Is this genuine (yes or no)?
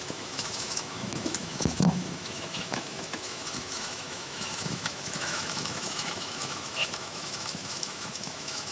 no